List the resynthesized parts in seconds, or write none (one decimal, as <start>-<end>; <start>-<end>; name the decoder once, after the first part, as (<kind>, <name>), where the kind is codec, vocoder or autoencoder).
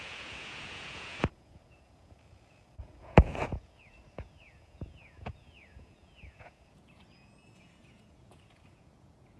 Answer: 0.0-9.4 (vocoder, Vocos)